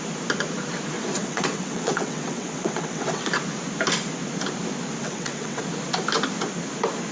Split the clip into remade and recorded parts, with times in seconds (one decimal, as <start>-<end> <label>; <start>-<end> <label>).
0.0-1.2 recorded; 1.2-3.3 remade; 3.3-5.0 recorded; 5.0-5.6 remade; 5.6-7.1 recorded